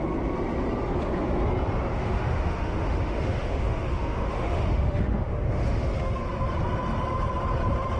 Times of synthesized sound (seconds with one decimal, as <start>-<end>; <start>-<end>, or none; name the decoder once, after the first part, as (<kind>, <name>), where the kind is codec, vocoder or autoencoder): 1.9-6.1 (autoencoder, DAC-VAE)